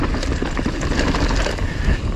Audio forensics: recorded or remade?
recorded